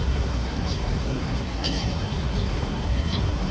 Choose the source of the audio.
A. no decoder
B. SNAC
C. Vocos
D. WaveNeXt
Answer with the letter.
B